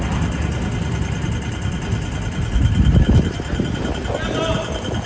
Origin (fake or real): real